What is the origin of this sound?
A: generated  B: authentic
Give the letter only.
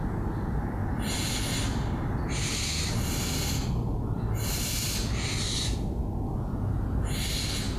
B